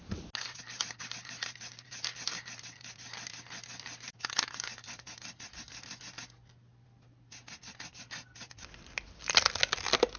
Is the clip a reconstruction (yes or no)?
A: no